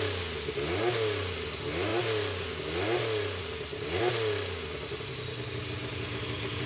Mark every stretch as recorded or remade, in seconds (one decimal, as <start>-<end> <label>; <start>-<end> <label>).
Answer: 0.0-6.7 recorded